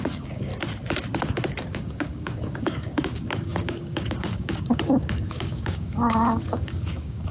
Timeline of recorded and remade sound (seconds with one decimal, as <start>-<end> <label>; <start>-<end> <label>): 0.0-0.5 remade; 0.5-1.6 recorded; 1.6-7.3 remade